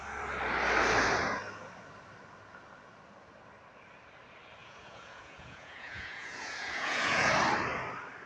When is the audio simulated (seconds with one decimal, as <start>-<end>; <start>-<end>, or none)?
4.6-7.3